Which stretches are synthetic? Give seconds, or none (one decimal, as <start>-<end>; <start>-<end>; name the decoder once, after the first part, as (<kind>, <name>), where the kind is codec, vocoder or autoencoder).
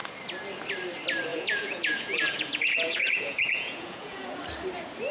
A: 1.3-4.4 (vocoder, Vocos)